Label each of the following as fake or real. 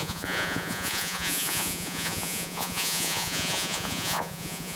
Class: fake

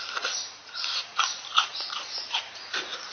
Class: fake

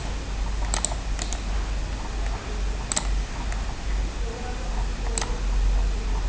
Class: real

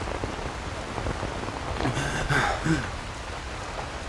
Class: real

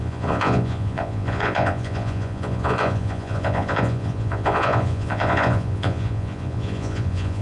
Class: fake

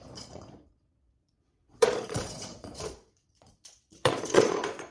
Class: fake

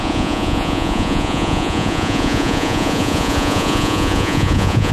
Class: fake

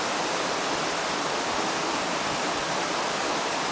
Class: real